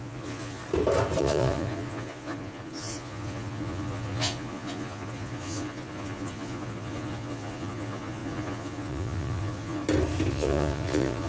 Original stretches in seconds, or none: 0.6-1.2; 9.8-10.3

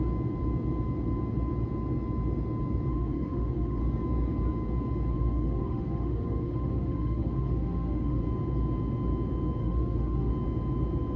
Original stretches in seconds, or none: 0.0-2.9; 3.8-5.1; 8.2-9.6; 10.3-11.2

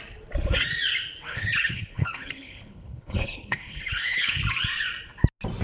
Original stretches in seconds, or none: 0.0-1.3; 4.4-5.6

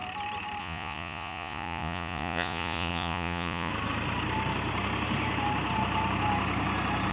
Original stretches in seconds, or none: 0.0-0.6; 3.7-7.1

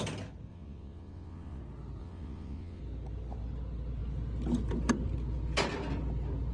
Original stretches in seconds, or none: 0.0-0.5; 1.6-2.0; 2.8-6.5